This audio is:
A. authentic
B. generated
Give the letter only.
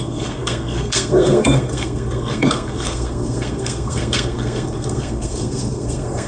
B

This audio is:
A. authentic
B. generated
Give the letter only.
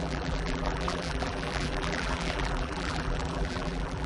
B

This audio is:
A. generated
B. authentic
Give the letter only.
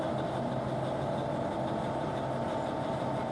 B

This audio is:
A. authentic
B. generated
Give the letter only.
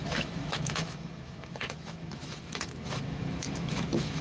B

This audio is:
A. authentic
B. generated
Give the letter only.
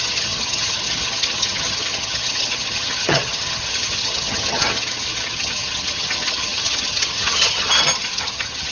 B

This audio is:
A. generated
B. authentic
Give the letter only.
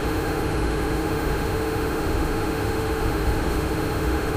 A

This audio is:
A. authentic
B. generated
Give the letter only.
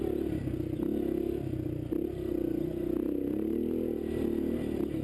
A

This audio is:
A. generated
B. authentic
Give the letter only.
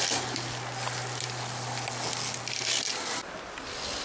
B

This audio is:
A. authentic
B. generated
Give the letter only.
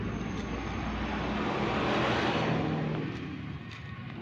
A